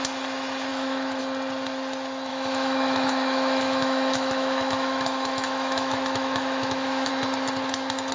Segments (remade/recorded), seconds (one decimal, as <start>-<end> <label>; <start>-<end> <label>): 0.0-0.7 recorded; 0.7-1.2 remade; 1.2-2.3 recorded; 2.3-7.1 remade; 7.1-8.1 recorded